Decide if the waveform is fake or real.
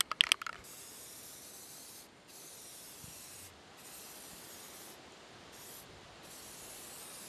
real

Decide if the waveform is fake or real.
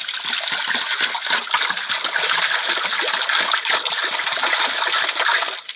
real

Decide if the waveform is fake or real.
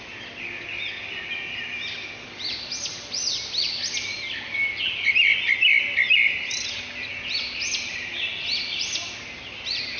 real